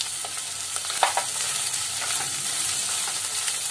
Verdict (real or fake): real